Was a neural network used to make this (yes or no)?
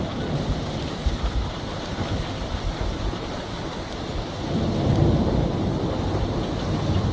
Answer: no